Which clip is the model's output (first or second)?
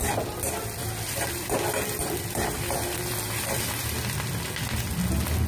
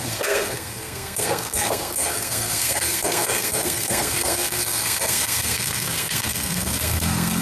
second